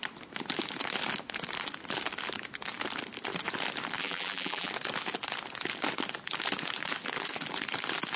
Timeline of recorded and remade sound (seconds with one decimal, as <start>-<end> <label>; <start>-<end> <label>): 0.0-4.0 recorded; 4.0-4.7 remade; 4.7-8.2 recorded

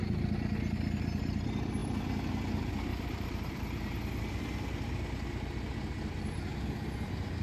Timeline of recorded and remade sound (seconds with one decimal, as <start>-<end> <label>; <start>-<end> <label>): 0.0-2.9 recorded; 2.9-4.2 remade; 4.2-7.4 recorded